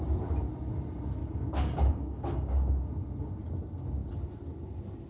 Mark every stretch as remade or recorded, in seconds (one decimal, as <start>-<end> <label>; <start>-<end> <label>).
0.0-1.2 recorded; 1.2-2.9 remade; 2.9-5.1 recorded